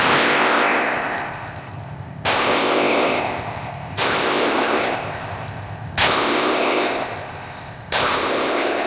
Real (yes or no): no